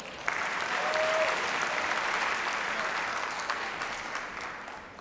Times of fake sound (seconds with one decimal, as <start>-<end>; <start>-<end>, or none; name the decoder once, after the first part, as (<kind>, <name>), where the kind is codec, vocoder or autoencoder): 3.1-3.7 (codec, SNAC)